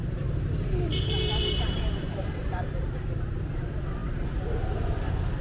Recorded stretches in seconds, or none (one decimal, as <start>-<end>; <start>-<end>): 3.2-5.4